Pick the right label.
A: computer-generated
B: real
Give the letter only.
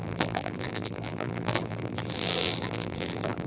A